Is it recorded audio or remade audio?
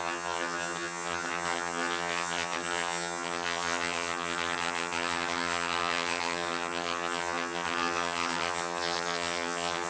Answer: remade